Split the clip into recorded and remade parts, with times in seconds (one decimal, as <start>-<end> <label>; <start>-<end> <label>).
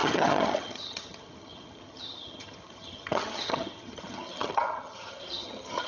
0.0-5.9 remade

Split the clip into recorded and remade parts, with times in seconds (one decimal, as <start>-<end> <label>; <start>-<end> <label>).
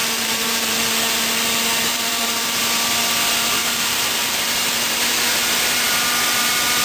0.0-0.7 remade; 0.7-1.9 recorded; 1.9-2.6 remade; 2.6-3.6 recorded; 3.6-5.0 remade; 5.0-6.8 recorded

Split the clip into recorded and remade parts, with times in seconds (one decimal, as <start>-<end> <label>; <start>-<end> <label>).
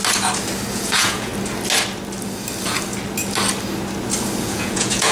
0.0-0.7 recorded; 0.7-1.3 remade; 1.3-4.4 recorded; 4.4-5.1 remade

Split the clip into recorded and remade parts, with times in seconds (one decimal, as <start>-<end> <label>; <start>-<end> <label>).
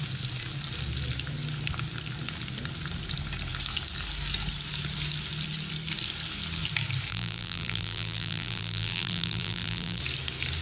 0.0-7.1 recorded; 7.1-10.0 remade; 10.0-10.6 recorded